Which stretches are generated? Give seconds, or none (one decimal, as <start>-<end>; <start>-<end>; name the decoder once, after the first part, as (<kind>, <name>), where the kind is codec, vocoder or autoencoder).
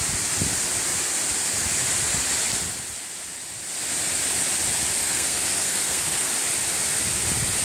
5.0-6.3 (codec, SNAC)